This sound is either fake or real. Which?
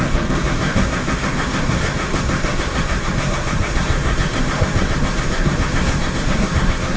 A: fake